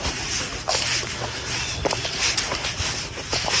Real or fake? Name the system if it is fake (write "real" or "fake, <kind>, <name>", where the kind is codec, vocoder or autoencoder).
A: real